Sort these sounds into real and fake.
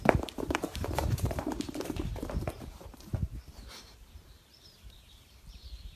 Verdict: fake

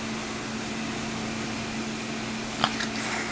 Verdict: real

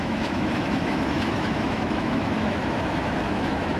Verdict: fake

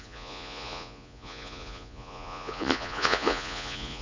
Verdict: fake